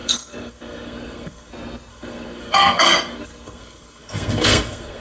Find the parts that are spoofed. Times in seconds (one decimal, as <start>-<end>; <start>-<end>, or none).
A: 0.0-1.5; 1.9-5.0